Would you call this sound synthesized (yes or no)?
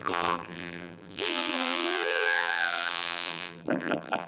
yes